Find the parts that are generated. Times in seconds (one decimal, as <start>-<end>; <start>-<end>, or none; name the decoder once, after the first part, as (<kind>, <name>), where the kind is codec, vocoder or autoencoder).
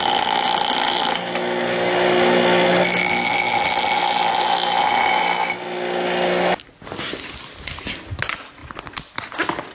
none